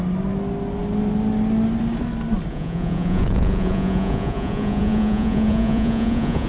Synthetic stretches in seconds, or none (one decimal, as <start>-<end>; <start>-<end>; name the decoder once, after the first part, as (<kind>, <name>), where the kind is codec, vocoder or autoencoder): 2.5-6.5 (vocoder, Vocos)